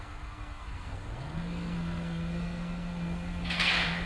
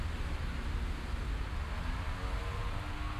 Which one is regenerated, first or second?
first